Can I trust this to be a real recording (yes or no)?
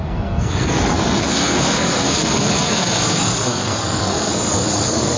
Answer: no